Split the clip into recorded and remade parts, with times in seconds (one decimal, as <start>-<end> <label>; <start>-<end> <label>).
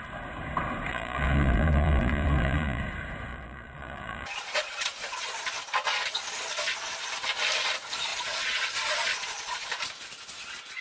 0.0-0.9 recorded; 0.9-2.8 remade; 2.8-3.3 recorded; 3.3-5.4 remade; 5.4-8.1 recorded; 8.1-9.7 remade; 9.7-10.8 recorded